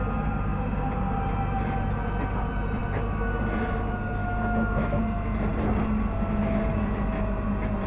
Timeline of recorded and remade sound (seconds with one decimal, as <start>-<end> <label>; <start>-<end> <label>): 0.0-4.2 recorded; 4.2-5.0 remade; 5.0-7.9 recorded